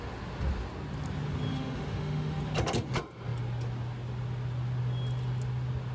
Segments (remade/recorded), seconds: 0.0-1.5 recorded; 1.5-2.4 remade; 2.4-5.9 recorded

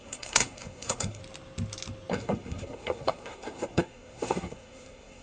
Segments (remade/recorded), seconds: 0.0-1.2 remade; 1.2-2.1 recorded; 2.1-5.2 remade

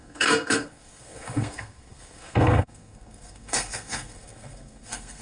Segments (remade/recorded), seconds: 0.0-5.2 remade

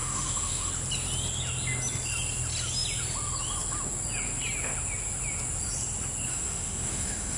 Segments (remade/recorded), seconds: 0.0-0.7 remade; 0.7-6.3 recorded; 6.3-7.4 remade

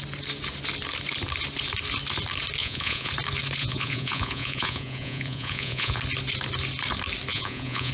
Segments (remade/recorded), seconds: 0.0-2.6 recorded; 2.6-3.1 remade; 3.1-3.6 recorded; 3.6-6.0 remade; 6.0-7.3 recorded; 7.3-7.9 remade

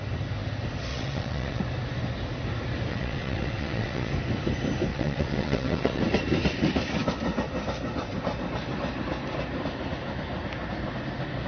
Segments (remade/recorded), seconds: 0.0-0.9 recorded; 0.9-1.6 remade; 1.6-2.9 recorded; 2.9-4.1 remade; 4.1-4.9 recorded; 4.9-6.0 remade; 6.0-11.5 recorded

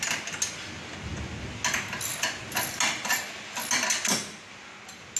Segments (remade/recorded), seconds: 0.0-5.2 recorded

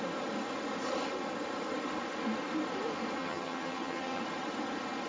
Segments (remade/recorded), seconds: 0.0-3.2 recorded; 3.2-4.2 remade; 4.2-5.1 recorded